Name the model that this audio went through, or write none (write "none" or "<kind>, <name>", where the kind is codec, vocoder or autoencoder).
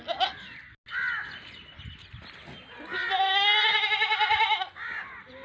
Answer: none